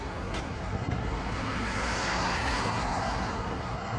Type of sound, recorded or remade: remade